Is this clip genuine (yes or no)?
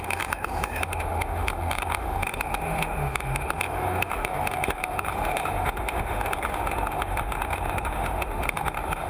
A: no